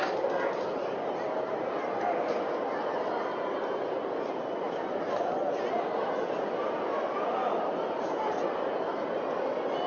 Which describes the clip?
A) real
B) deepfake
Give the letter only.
A